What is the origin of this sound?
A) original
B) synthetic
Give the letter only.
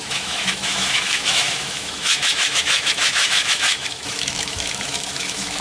B